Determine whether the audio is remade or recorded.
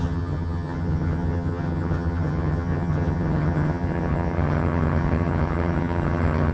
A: remade